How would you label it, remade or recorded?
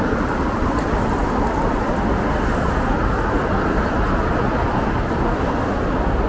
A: recorded